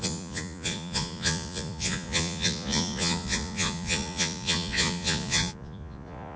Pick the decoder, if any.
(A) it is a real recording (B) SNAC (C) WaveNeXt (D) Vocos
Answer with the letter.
D